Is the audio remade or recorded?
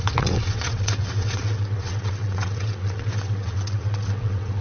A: remade